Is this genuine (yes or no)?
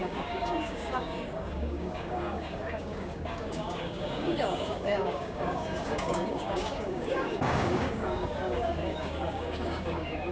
no